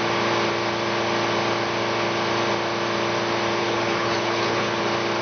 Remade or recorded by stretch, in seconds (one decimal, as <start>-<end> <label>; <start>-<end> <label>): 0.0-3.6 recorded; 3.6-4.8 remade; 4.8-5.2 recorded